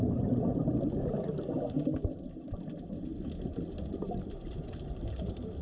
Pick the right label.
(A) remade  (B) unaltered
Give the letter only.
B